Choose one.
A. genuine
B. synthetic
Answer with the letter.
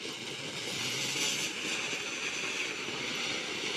A